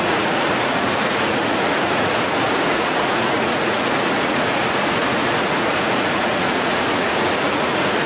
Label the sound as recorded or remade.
remade